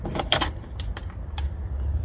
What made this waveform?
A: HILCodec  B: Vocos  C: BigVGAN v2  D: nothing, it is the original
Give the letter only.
C